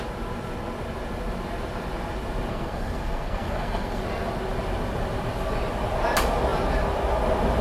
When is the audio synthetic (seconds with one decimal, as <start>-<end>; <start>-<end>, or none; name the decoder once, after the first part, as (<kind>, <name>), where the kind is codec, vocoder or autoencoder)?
2.5-4.0 (codec, SNAC)